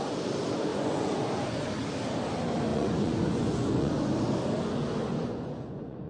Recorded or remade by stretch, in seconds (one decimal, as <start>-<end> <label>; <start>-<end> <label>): 0.0-0.7 recorded; 0.7-1.7 remade; 1.7-2.7 recorded; 2.7-4.1 remade; 4.1-5.1 recorded; 5.1-6.1 remade